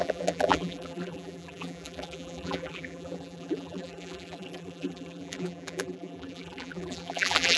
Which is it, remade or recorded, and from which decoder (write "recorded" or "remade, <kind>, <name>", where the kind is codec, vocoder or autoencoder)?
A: remade, vocoder, BigVGAN v2